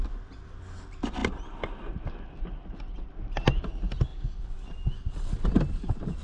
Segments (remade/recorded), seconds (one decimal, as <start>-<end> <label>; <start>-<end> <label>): 0.0-6.2 recorded